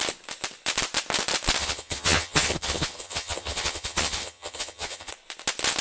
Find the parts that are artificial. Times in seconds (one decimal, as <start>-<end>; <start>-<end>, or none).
1.6-5.1

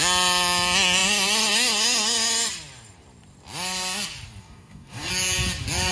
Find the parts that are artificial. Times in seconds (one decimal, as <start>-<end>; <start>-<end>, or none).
4.4-5.1

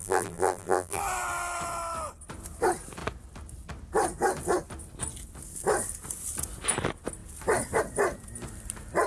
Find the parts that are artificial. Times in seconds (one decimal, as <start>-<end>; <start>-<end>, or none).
0.0-1.0

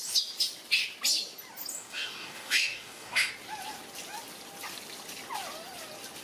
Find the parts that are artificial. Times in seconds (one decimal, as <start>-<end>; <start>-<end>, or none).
1.7-3.3